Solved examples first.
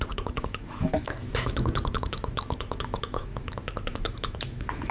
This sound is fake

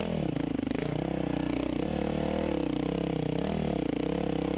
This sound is real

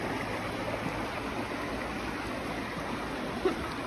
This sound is real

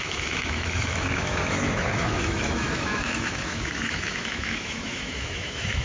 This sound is fake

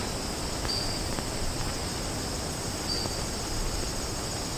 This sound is real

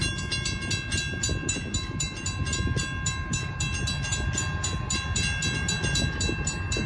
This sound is real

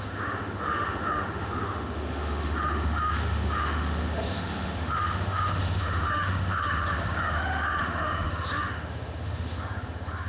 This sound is fake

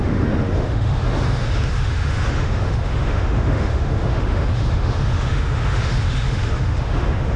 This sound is fake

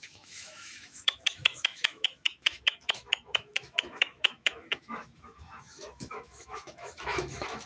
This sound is fake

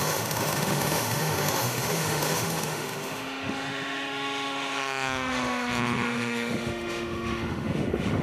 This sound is fake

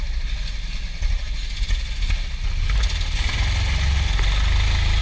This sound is real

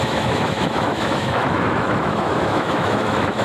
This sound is fake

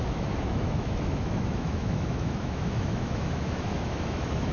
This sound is fake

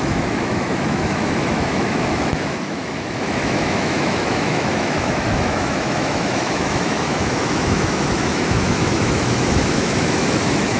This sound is fake